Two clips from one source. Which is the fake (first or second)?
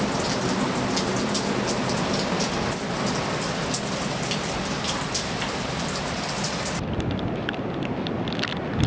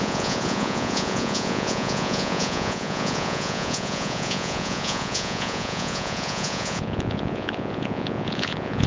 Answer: second